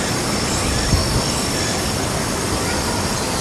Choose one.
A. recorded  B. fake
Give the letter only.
A